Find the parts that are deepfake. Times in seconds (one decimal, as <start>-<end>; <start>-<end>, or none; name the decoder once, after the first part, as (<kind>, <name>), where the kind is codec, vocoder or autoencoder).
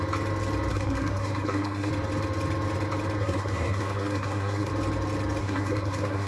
0.7-1.9 (codec, SNAC); 3.2-4.7; 5.4-6.3